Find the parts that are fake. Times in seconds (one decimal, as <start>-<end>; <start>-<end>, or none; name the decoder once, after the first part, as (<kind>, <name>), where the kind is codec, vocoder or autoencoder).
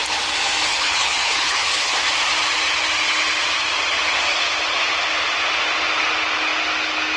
0.7-2.0 (codec, HILCodec)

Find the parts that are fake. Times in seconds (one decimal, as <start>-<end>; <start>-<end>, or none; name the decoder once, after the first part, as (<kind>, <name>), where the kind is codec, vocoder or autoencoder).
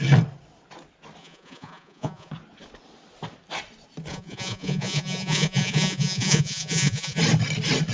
1.2-2.3 (vocoder, Vocos); 4.1-7.2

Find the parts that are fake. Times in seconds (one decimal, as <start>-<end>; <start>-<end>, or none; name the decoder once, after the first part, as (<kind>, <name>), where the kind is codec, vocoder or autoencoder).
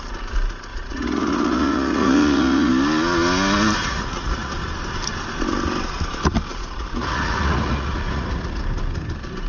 0.7-2.7 (vocoder, Vocos); 3.8-4.5; 6.5-8.6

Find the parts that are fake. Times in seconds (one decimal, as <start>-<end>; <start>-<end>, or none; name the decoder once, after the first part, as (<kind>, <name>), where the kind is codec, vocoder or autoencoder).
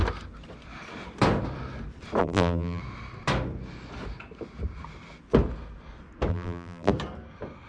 2.2-2.8 (vocoder, BigVGAN v2); 6.3-6.9